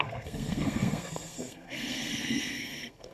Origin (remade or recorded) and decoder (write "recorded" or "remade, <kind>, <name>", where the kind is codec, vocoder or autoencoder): remade, codec, SNAC